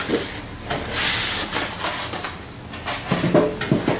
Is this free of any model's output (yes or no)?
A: yes